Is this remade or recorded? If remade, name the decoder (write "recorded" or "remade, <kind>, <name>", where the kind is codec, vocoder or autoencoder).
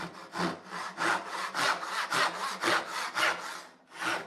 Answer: recorded